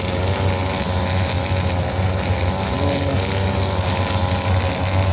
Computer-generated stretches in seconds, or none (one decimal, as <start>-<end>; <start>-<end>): none